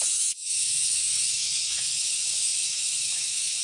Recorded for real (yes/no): no